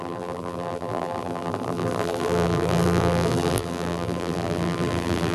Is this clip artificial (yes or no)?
yes